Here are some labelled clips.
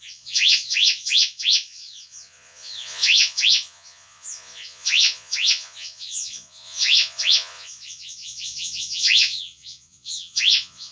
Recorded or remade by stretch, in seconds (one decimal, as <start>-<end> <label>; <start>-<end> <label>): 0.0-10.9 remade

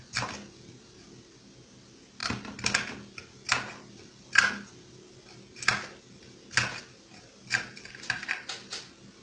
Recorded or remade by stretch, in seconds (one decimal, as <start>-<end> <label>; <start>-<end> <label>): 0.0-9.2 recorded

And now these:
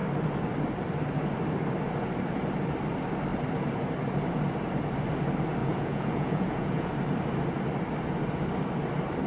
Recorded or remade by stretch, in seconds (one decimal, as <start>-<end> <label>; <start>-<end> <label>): 0.0-5.6 recorded; 5.6-6.9 remade; 6.9-9.3 recorded